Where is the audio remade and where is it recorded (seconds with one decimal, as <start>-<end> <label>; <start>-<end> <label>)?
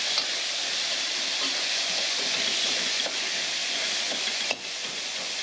0.0-1.5 recorded; 1.5-3.2 remade; 3.2-3.6 recorded; 3.6-5.4 remade